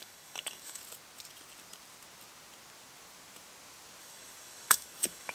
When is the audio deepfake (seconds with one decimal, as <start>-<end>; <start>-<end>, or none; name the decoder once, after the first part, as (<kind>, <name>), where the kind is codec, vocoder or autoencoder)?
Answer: 0.0-0.8 (codec, DAC); 4.0-5.3